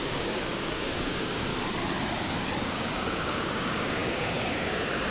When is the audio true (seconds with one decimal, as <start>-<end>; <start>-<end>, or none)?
1.5-2.7